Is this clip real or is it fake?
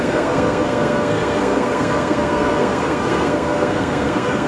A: fake